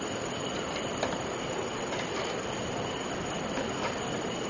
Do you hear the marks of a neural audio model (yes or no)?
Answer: no